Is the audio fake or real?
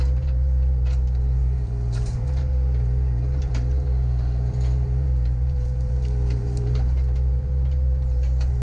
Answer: fake